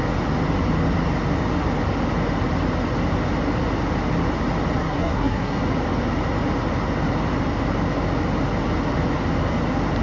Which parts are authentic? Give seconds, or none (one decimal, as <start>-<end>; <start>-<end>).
0.0-4.8; 5.6-10.0